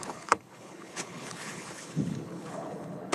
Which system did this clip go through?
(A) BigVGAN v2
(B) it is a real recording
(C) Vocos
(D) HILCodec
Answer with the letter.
D